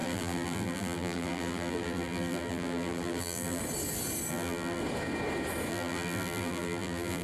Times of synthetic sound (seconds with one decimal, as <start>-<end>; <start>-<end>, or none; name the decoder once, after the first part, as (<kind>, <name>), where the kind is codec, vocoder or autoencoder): 0.0-3.6 (vocoder, BigVGAN v2); 4.3-4.8; 5.7-7.2